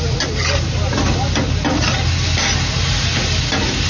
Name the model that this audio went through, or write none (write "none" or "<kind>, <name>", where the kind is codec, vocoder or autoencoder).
none